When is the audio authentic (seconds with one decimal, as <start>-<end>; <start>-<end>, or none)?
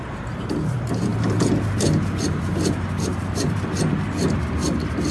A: none